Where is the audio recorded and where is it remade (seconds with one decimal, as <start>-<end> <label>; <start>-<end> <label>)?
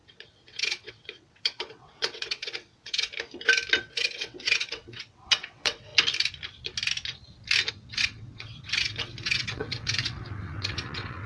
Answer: 0.0-3.1 remade; 3.1-3.8 recorded; 3.8-5.9 remade; 5.9-7.7 recorded; 7.7-11.3 remade